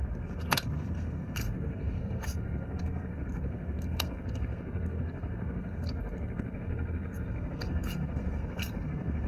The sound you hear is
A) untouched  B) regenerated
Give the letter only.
B